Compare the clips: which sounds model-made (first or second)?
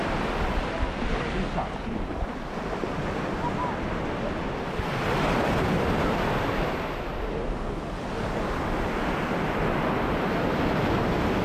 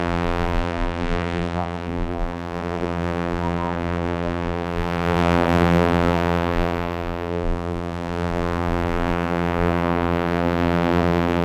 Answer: second